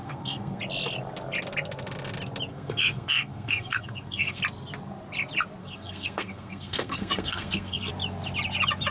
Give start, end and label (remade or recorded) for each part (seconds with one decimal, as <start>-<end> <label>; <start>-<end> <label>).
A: 0.0-0.6 remade; 0.6-2.5 recorded; 2.5-4.4 remade; 4.4-5.6 recorded; 5.6-7.9 remade; 7.9-8.9 recorded